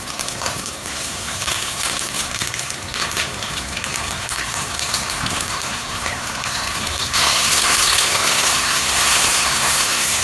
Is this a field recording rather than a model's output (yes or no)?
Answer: no